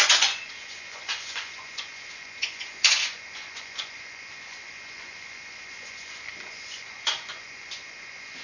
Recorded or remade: remade